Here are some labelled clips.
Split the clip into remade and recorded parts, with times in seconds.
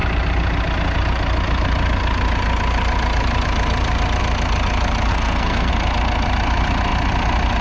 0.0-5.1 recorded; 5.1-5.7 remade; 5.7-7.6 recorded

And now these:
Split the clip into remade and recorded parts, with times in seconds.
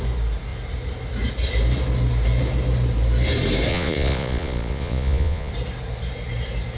0.0-3.7 recorded; 3.7-5.5 remade; 5.5-6.8 recorded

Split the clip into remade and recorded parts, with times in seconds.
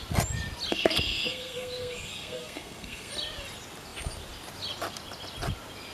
0.0-0.7 recorded; 0.7-3.1 remade; 3.1-5.9 recorded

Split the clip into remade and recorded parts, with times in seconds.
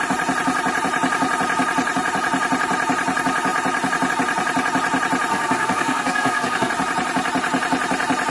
0.0-5.3 recorded; 5.3-6.7 remade; 6.7-8.3 recorded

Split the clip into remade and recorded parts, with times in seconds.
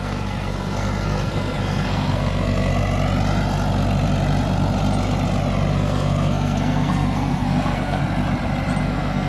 0.0-2.7 remade; 2.7-5.7 recorded; 5.7-8.0 remade; 8.0-8.8 recorded; 8.8-9.3 remade